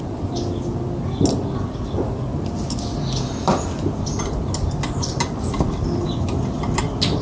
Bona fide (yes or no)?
yes